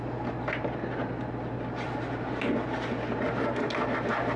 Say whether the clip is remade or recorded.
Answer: recorded